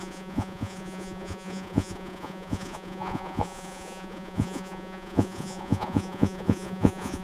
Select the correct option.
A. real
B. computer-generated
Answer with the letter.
B